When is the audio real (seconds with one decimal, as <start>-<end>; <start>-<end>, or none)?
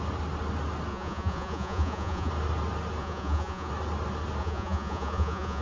0.0-0.9; 2.3-3.0; 3.7-4.4